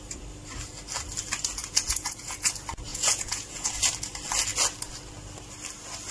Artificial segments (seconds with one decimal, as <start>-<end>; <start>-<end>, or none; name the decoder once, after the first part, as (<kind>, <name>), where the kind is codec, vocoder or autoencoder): 1.6-2.5 (vocoder, Vocos); 2.9-3.7